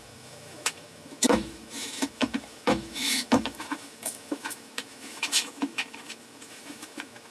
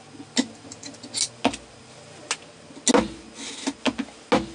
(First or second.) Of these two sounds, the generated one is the first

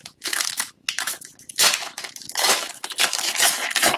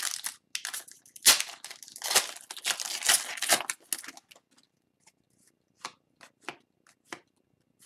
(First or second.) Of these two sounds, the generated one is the first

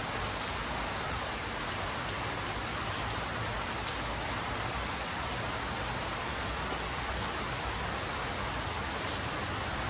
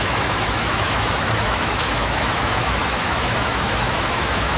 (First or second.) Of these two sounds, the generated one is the second